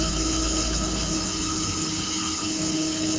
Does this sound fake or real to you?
fake